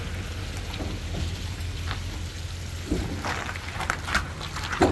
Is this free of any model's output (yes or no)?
yes